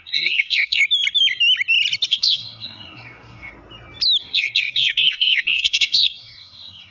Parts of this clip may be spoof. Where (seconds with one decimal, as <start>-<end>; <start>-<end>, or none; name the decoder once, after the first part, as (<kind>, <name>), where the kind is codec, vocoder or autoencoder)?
0.0-0.8 (codec, SNAC); 2.1-3.5; 4.2-6.9